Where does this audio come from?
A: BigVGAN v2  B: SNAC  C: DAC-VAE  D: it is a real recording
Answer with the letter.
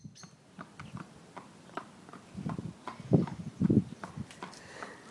A